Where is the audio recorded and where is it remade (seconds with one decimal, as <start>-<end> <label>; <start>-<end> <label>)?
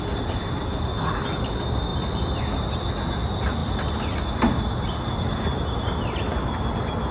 0.0-1.9 recorded; 1.9-2.4 remade; 2.4-7.1 recorded